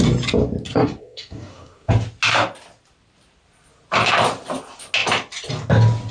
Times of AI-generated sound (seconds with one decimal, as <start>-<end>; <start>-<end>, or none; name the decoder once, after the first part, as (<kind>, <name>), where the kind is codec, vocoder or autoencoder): 0.7-1.9 (codec, SNAC)

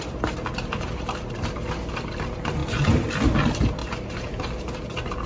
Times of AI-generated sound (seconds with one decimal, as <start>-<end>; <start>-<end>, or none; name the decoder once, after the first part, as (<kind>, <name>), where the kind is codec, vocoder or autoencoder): 3.8-4.3 (vocoder, BigVGAN v2)

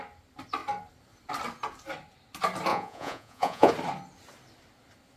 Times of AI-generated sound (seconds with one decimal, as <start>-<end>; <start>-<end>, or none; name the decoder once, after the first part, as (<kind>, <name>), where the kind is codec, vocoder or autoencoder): 2.7-3.7 (vocoder, Vocos)

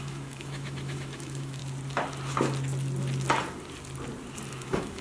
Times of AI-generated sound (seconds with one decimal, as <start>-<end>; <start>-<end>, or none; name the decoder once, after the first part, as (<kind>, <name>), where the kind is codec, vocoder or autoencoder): 0.0-1.6 (autoencoder, DAC-VAE); 4.5-5.0

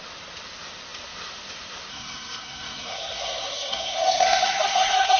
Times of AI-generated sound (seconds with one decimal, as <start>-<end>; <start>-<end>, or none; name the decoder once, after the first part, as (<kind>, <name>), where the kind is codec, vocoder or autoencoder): 1.9-5.2 (codec, SNAC)